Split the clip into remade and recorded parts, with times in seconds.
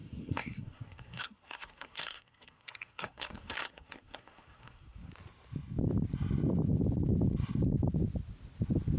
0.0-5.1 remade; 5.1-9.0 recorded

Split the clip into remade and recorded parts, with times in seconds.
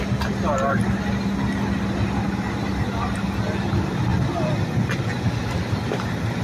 0.0-6.4 recorded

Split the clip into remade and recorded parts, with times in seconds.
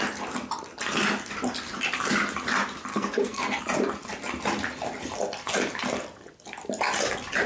0.0-2.9 recorded; 2.9-3.6 remade; 3.6-7.5 recorded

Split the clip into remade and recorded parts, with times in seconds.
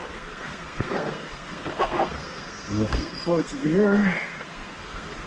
0.0-5.3 remade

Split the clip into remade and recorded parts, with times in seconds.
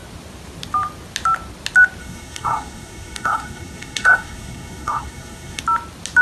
0.0-2.0 recorded; 2.0-5.6 remade; 5.6-6.2 recorded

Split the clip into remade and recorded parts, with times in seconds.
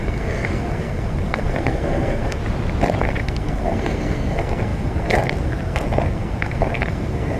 0.0-2.4 remade; 2.4-3.0 recorded; 3.0-7.4 remade